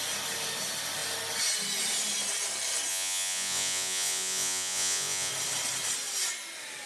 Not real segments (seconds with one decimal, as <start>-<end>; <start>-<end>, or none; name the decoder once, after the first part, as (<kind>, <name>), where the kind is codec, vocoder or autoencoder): 2.9-5.3 (vocoder, Vocos)